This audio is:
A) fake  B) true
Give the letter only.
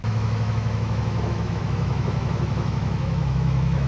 A